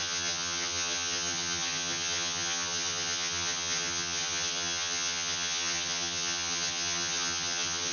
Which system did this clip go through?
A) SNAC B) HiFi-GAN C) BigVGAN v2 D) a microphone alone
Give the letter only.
B